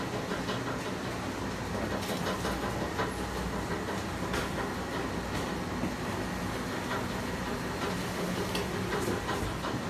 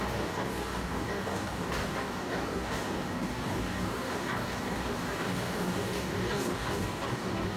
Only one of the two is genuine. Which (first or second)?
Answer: first